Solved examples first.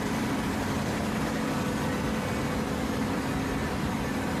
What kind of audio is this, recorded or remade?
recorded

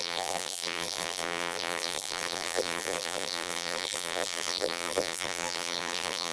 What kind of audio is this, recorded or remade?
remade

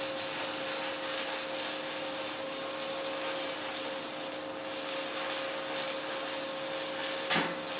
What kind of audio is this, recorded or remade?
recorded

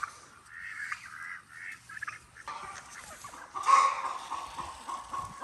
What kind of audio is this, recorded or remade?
remade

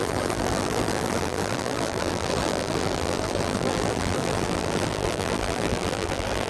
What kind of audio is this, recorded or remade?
remade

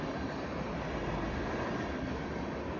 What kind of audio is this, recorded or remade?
recorded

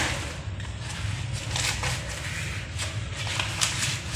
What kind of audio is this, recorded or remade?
remade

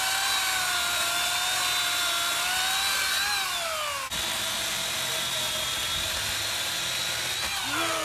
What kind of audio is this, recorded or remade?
recorded